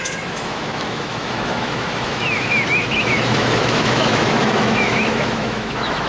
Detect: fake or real fake